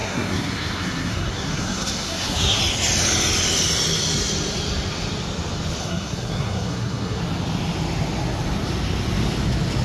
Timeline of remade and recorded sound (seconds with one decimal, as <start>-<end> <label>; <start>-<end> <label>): 0.0-2.6 remade; 2.6-5.8 recorded; 5.8-7.2 remade; 7.2-9.8 recorded